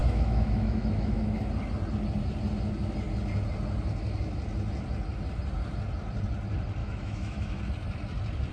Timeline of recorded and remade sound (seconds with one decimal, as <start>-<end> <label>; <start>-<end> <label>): 0.0-1.4 remade; 1.4-6.8 recorded; 6.8-7.6 remade; 7.6-8.5 recorded

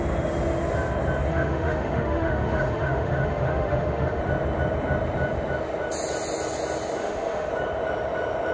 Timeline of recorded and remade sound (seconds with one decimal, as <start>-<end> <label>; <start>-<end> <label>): 0.0-1.3 recorded; 1.3-4.2 remade; 4.2-7.0 recorded; 7.0-7.5 remade; 7.5-8.5 recorded

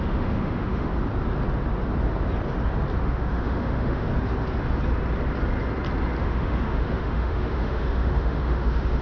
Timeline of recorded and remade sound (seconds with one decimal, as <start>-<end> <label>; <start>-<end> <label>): 0.0-0.9 remade; 0.9-3.0 recorded; 3.0-4.1 remade; 4.1-6.2 recorded; 6.2-9.0 remade

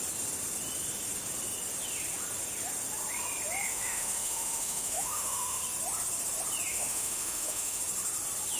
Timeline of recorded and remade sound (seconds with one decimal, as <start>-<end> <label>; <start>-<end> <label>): 0.0-3.7 recorded; 3.7-5.6 remade; 5.6-6.7 recorded; 6.7-7.8 remade; 7.8-8.6 recorded

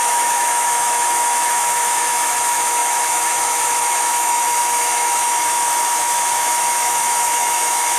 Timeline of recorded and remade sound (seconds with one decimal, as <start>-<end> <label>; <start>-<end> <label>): 0.0-8.0 remade

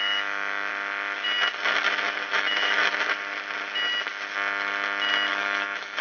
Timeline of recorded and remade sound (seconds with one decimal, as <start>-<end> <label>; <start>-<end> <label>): 0.0-0.7 remade; 0.7-2.3 recorded; 2.3-2.8 remade; 2.8-5.3 recorded; 5.3-6.0 remade

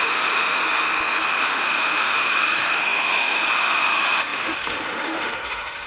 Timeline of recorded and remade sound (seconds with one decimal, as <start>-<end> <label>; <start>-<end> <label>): 0.0-0.6 remade; 0.6-1.3 recorded; 1.3-5.9 remade

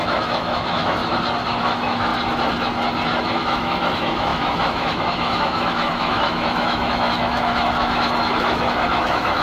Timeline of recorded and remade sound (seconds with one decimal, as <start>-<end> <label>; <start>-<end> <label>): 0.0-1.0 remade; 1.0-1.6 recorded; 1.6-2.1 remade; 2.1-3.2 recorded; 3.2-9.4 remade